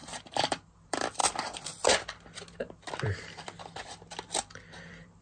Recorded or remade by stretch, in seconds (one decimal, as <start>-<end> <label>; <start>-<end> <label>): 0.0-1.2 remade; 1.2-2.9 recorded; 2.9-5.2 remade